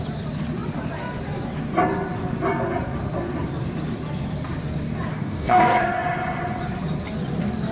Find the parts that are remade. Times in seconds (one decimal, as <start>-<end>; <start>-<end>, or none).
5.1-6.0